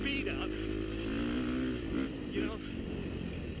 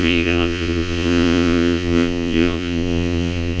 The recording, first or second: first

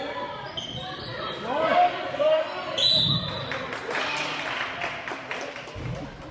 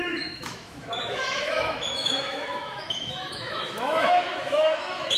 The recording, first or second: first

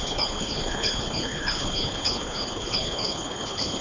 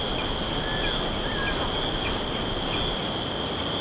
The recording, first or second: second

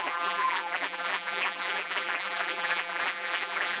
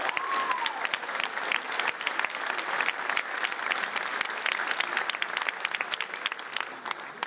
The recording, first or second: second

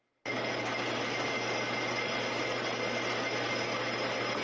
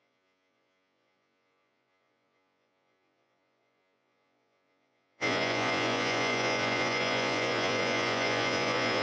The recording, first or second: first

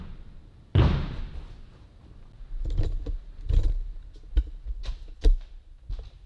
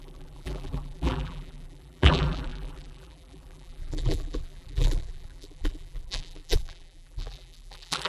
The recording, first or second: first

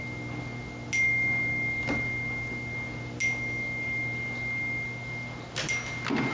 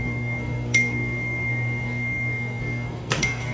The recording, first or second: first